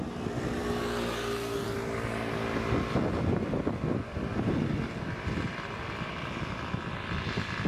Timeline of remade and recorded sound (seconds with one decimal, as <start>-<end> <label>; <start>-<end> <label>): 0.0-7.7 recorded